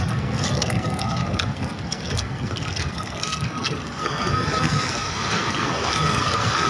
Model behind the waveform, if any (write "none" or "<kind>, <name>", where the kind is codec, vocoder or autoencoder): codec, SNAC